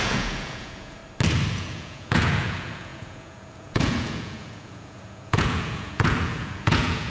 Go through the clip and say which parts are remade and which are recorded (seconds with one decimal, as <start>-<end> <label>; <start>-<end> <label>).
0.0-1.0 remade; 1.0-1.5 recorded; 1.5-7.1 remade